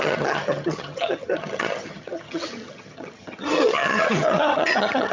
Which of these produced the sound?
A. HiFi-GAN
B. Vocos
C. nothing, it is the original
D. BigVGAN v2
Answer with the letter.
A